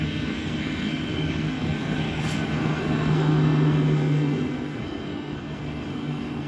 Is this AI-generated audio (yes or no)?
yes